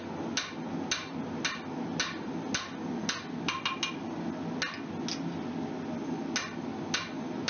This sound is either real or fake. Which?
real